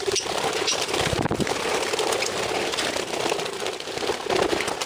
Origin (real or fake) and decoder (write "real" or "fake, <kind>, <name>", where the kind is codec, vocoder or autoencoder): real